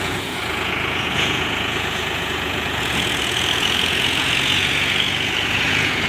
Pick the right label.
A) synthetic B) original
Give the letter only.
A